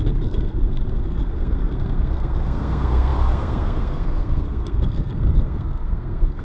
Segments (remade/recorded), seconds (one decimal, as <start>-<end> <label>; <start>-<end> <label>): 0.0-6.4 remade